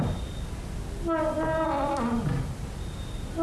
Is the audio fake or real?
real